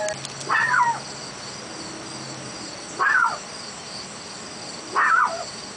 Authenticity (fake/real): real